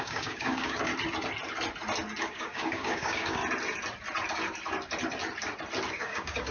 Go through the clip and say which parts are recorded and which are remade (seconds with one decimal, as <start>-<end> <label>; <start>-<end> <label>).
0.0-0.9 remade; 0.9-2.2 recorded; 2.2-3.4 remade; 3.4-5.9 recorded; 5.9-6.5 remade